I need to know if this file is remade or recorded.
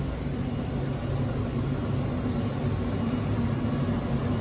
recorded